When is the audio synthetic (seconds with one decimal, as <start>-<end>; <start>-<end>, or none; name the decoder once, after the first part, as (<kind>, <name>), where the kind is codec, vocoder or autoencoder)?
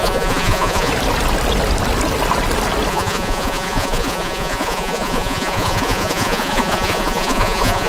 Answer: 0.0-0.9 (vocoder, Vocos); 2.9-7.9